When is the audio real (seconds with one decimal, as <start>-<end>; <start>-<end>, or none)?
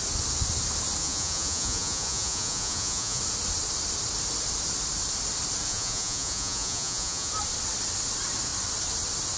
0.0-1.0; 3.2-5.7; 7.3-9.4